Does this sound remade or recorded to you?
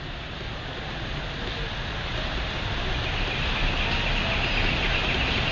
recorded